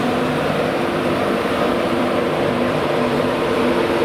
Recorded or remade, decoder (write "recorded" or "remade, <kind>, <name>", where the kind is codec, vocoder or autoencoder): remade, vocoder, BigVGAN v2